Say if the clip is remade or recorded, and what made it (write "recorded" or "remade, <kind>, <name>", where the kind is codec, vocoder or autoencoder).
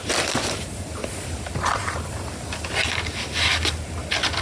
recorded